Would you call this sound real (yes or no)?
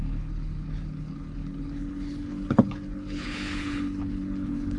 no